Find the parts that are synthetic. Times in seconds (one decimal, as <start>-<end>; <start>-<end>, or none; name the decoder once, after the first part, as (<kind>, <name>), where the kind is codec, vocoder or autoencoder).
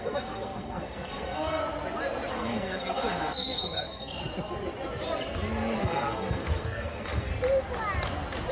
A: 0.0-1.6 (codec, SNAC); 2.3-4.1; 5.8-7.3